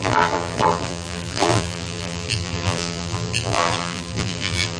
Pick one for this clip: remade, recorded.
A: remade